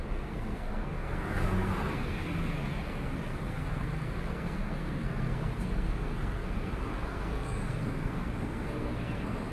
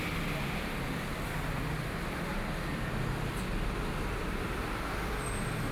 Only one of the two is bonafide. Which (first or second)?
second